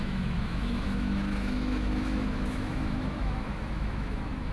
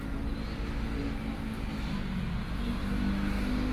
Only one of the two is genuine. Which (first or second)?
second